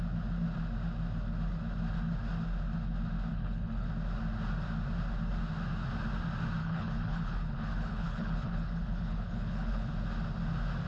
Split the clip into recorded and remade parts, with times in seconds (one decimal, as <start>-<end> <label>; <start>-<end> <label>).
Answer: 0.0-3.3 recorded; 3.3-3.9 remade; 3.9-6.6 recorded; 6.6-9.9 remade; 9.9-10.9 recorded